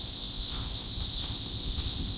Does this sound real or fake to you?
fake